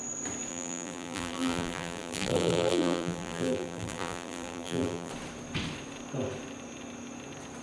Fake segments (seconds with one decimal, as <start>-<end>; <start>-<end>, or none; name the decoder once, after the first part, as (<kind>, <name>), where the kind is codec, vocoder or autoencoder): 0.5-5.1 (vocoder, BigVGAN v2)

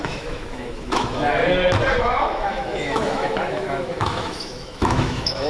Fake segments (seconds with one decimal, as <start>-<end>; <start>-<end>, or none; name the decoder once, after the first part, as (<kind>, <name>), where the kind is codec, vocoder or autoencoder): 0.0-1.4 (autoencoder, DAC-VAE); 2.0-5.5

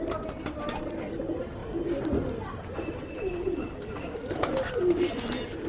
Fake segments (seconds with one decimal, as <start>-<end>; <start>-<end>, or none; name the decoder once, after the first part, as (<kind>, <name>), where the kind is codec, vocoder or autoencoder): none

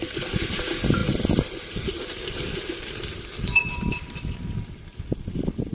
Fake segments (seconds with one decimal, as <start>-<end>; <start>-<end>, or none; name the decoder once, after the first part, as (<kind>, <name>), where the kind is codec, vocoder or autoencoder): 0.0-5.7 (vocoder, BigVGAN v2)